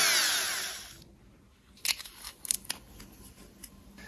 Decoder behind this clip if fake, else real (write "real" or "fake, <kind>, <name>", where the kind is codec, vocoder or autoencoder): real